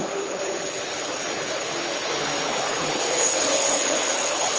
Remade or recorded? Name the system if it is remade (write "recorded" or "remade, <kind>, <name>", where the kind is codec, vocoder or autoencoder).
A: remade, codec, HILCodec